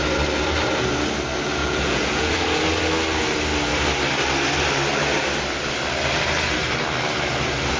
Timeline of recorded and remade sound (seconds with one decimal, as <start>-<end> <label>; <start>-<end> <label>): 0.0-1.6 recorded; 1.6-2.3 remade; 2.3-7.8 recorded